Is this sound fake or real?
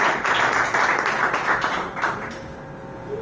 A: real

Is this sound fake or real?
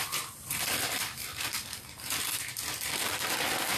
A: fake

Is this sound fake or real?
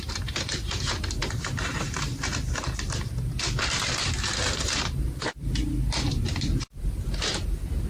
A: fake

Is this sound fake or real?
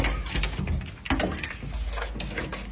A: real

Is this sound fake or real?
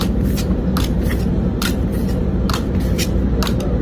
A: fake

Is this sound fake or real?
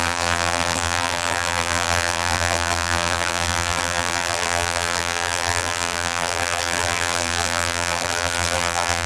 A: fake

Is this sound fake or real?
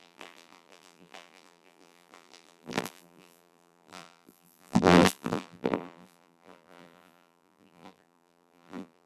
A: fake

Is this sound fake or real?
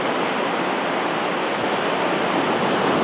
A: real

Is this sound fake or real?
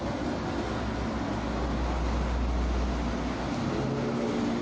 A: real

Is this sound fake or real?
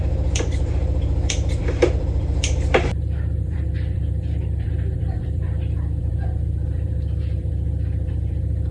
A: fake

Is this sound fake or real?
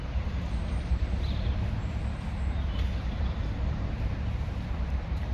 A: fake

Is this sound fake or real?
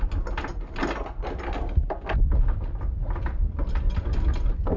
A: real